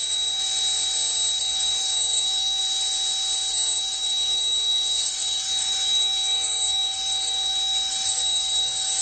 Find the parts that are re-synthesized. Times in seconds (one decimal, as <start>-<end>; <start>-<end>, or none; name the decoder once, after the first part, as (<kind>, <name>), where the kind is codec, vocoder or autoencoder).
1.4-2.6 (codec, DAC); 3.5-9.0